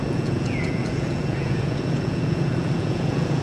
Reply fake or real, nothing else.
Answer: fake